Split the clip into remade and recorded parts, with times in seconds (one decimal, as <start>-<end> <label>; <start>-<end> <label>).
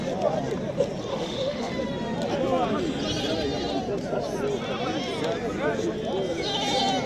0.0-1.1 recorded; 1.1-1.7 remade; 1.7-7.1 recorded